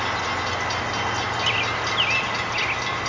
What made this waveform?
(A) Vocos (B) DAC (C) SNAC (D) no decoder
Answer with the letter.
D